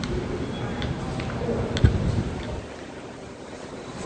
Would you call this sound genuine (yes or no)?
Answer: no